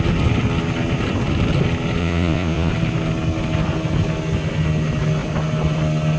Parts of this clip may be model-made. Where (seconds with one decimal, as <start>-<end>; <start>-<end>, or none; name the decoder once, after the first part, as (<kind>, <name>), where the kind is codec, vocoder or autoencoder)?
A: 2.0-2.7 (vocoder, Vocos)